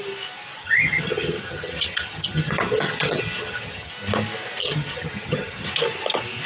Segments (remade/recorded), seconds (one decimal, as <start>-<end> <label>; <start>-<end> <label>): 0.0-0.6 recorded; 0.6-3.9 remade; 3.9-4.6 recorded; 4.6-5.7 remade; 5.7-6.5 recorded